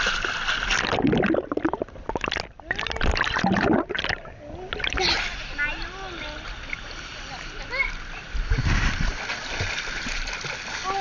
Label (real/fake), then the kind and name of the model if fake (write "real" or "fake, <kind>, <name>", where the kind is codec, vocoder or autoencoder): real